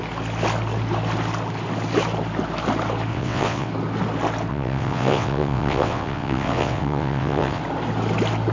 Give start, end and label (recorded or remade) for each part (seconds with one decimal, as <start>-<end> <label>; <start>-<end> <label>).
0.0-3.1 recorded; 3.1-3.7 remade; 3.7-4.5 recorded; 4.5-7.6 remade; 7.6-8.5 recorded